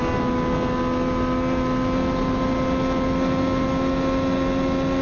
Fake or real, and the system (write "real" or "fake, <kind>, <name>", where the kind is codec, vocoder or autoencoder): real